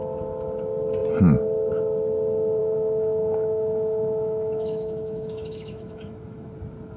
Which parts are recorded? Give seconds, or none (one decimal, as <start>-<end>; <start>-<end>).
0.0-2.6; 6.5-7.0